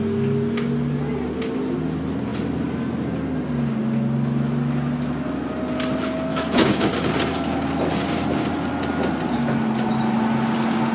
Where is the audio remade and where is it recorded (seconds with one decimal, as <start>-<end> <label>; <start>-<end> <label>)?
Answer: 0.0-6.3 recorded; 6.3-6.9 remade; 6.9-10.9 recorded